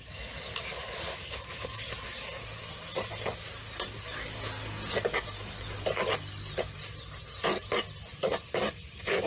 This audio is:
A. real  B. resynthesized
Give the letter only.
A